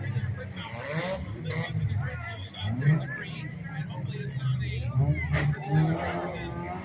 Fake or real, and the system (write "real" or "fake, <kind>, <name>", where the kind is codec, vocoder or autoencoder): real